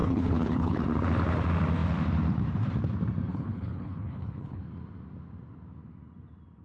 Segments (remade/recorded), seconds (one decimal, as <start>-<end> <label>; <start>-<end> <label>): 0.0-0.8 remade; 0.8-3.3 recorded; 3.3-4.6 remade; 4.6-6.6 recorded